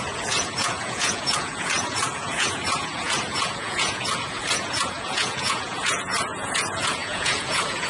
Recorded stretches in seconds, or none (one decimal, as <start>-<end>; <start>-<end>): none